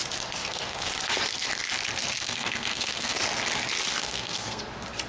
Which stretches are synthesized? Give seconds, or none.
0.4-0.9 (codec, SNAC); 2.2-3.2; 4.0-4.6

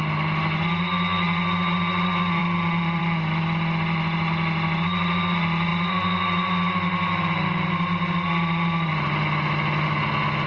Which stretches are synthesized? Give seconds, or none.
none

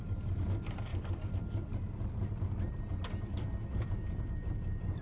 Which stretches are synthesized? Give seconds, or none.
none

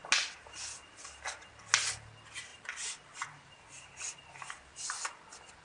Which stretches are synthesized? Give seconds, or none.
none